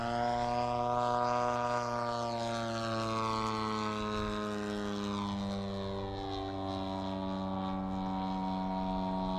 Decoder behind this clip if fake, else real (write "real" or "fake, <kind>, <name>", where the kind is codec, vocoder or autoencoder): real